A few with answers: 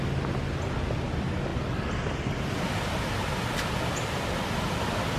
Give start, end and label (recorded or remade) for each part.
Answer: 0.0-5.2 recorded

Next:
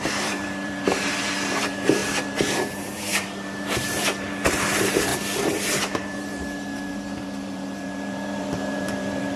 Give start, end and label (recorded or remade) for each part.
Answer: 0.0-5.1 remade; 5.1-5.8 recorded; 5.8-9.4 remade

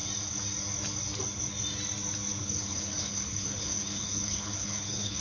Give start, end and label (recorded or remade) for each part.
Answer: 0.0-2.4 recorded; 2.4-5.2 remade

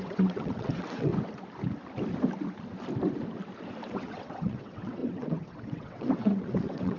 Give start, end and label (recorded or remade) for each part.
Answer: 0.0-1.1 remade; 1.1-3.8 recorded; 3.8-7.0 remade

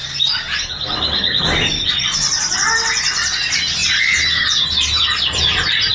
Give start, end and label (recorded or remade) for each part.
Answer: 0.0-5.9 recorded

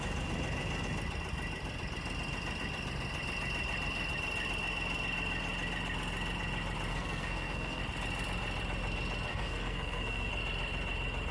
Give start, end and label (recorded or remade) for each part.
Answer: 0.0-6.9 recorded; 6.9-7.8 remade; 7.8-9.3 recorded; 9.3-10.3 remade; 10.3-11.3 recorded